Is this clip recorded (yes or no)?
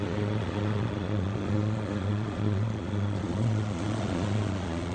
no